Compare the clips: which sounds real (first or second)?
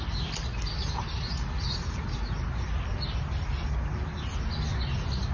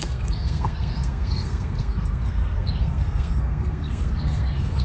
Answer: first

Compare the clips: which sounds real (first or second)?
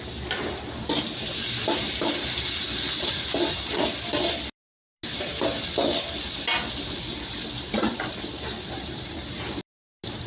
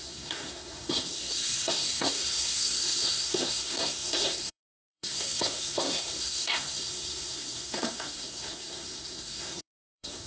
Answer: first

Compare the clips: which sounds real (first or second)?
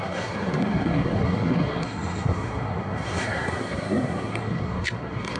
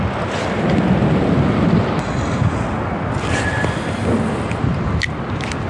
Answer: second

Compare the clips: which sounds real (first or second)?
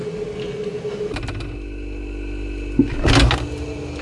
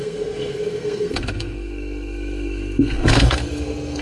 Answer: first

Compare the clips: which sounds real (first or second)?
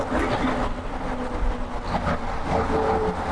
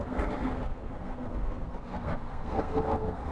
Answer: first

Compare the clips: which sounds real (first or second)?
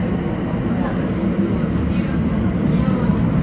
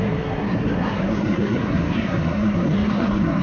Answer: first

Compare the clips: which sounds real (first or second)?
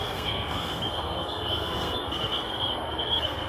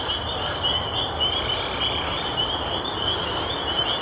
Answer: second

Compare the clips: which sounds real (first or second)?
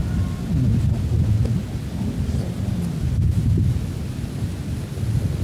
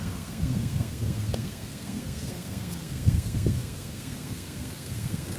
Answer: first